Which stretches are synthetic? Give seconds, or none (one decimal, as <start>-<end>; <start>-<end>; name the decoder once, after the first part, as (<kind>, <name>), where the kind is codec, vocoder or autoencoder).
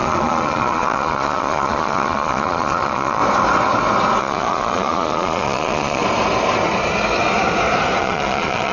0.0-3.2 (vocoder, Vocos); 4.2-6.0; 8.0-8.7